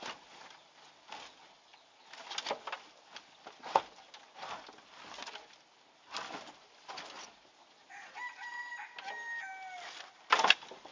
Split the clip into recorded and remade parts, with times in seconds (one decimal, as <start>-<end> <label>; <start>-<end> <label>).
0.0-10.9 recorded